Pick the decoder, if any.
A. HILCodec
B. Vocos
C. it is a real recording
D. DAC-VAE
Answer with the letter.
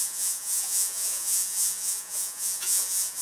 B